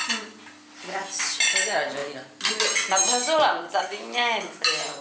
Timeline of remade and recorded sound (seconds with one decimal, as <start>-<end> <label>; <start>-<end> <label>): 0.0-5.0 recorded